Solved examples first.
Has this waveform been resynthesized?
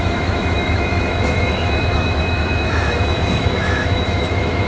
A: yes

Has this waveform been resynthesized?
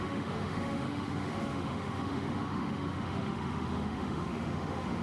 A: yes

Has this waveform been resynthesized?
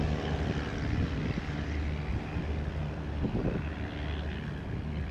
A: no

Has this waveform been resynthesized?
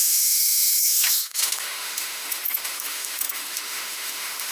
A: yes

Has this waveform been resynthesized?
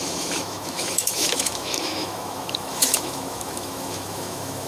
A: yes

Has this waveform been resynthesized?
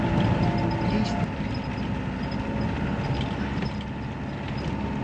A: no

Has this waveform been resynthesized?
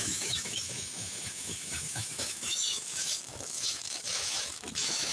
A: yes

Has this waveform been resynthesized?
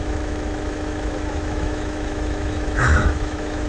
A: yes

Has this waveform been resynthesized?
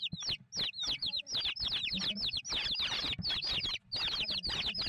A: no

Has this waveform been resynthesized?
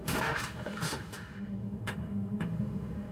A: yes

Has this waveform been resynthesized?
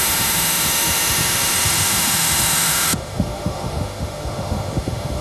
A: yes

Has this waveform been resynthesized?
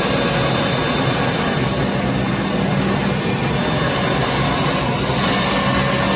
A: no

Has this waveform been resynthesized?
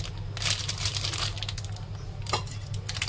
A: no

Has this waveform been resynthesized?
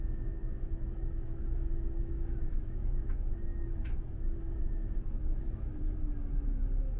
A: yes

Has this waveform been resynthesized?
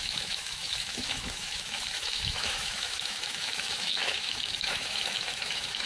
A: yes